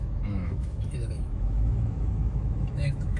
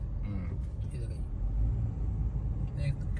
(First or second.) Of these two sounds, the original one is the second